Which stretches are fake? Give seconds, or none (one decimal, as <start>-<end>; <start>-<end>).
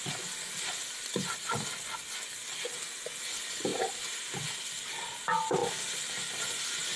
3.7-4.3